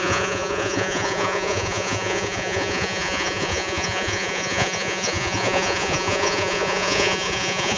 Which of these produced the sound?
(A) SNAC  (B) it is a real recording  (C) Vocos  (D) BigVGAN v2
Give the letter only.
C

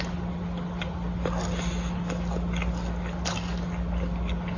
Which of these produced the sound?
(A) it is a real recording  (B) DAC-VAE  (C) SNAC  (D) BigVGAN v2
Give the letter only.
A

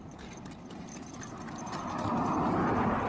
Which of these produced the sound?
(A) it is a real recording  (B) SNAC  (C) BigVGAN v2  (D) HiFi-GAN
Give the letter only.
A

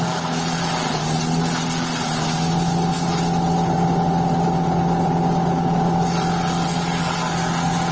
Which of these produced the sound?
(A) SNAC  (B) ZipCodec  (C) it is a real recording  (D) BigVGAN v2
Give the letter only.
C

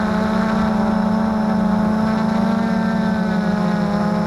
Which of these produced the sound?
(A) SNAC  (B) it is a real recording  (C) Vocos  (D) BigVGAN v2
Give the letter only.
B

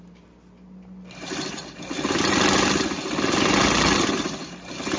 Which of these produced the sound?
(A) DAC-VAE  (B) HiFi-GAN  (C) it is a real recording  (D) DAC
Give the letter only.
C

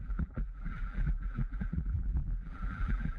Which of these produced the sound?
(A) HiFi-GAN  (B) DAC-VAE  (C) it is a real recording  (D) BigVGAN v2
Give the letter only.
D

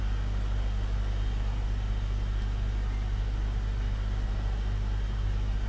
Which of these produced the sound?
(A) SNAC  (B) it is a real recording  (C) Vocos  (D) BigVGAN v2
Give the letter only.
B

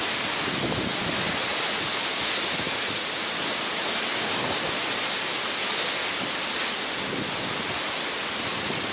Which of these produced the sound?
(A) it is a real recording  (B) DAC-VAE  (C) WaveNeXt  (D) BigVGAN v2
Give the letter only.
A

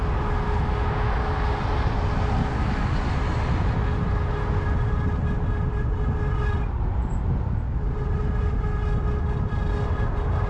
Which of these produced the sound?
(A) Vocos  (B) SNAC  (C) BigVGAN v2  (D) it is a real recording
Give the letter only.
D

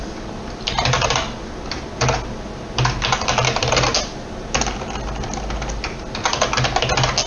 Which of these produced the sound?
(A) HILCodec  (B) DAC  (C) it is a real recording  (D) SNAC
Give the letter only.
C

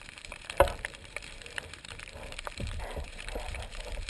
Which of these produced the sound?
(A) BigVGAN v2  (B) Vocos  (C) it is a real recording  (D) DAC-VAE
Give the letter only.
A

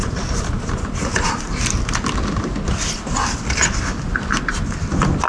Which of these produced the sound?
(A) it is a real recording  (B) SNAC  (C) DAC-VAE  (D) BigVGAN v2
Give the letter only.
A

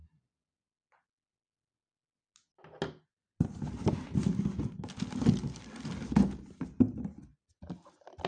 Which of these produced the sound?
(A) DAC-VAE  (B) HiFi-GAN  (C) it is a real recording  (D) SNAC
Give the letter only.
C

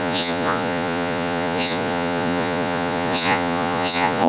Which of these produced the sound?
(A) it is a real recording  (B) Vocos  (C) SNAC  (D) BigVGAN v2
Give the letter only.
B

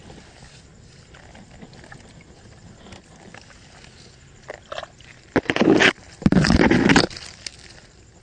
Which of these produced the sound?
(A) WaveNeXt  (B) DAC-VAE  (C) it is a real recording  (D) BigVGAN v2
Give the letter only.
C